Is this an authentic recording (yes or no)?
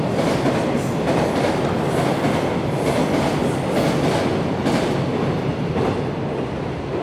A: yes